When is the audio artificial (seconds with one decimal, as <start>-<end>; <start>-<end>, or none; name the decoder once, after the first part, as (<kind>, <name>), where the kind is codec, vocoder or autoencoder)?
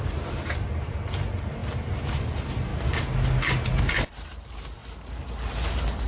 0.0-2.7 (vocoder, BigVGAN v2); 3.8-4.8